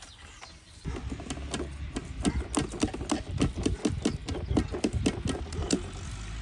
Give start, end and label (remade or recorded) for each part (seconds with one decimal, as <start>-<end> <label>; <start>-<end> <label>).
0.0-6.4 recorded

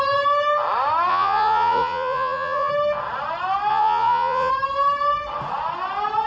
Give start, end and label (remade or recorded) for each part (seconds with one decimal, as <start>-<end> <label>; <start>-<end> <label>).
0.0-1.1 recorded; 1.1-2.7 remade; 2.7-3.7 recorded; 3.7-4.5 remade; 4.5-6.3 recorded

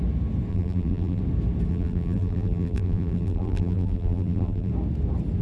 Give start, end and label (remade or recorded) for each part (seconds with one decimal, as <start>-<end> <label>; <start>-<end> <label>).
0.0-0.5 recorded; 0.5-1.2 remade; 1.2-1.7 recorded; 1.7-4.7 remade; 4.7-5.4 recorded

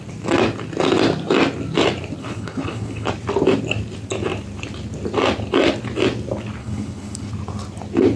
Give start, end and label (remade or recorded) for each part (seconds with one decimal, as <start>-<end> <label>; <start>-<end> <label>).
0.0-2.2 recorded; 2.2-3.1 remade; 3.1-6.6 recorded; 6.6-7.3 remade; 7.3-8.2 recorded

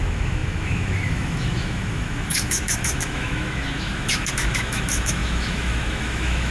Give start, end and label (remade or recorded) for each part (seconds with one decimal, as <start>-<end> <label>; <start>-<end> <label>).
0.0-6.5 remade

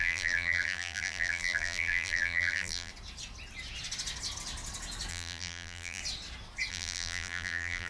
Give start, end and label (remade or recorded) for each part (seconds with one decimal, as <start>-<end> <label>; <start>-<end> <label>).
0.0-2.9 remade; 2.9-5.1 recorded; 5.1-6.0 remade; 6.0-6.7 recorded; 6.7-7.9 remade

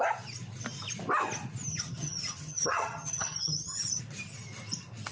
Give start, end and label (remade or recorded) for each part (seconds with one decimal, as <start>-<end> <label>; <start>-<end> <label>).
0.0-1.7 recorded; 1.7-4.0 remade; 4.0-5.1 recorded